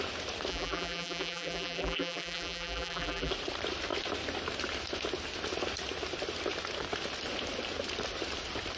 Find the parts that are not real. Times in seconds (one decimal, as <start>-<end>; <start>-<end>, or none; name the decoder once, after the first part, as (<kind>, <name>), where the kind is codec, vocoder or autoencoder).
0.5-3.3 (vocoder, BigVGAN v2)